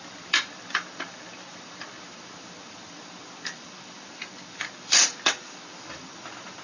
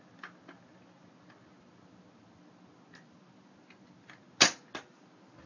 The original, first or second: second